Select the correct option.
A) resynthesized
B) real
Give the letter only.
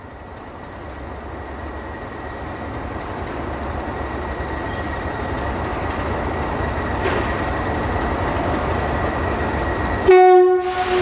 B